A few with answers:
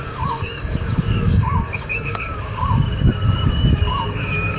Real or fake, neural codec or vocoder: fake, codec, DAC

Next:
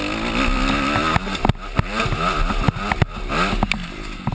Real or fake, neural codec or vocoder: real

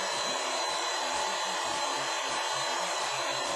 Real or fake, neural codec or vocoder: fake, vocoder, BigVGAN v2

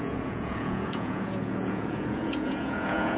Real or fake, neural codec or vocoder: fake, vocoder, Vocos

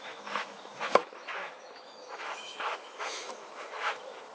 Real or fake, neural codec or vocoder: fake, autoencoder, DAC-VAE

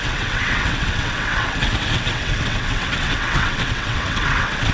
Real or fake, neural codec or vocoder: fake, vocoder, WaveNeXt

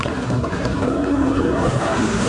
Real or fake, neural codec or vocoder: fake, codec, SNAC